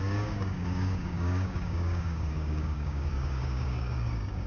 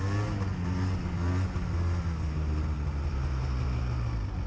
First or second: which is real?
second